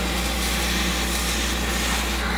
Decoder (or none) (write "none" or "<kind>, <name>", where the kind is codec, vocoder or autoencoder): none